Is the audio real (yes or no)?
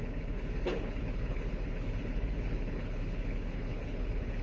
no